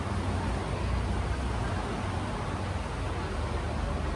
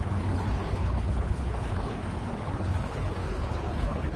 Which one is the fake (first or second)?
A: second